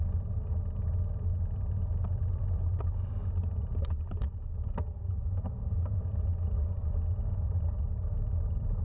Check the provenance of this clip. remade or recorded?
recorded